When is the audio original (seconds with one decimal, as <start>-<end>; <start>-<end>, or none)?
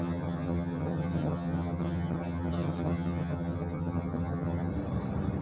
4.7-5.4